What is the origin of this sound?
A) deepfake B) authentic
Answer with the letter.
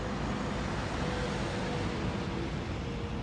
B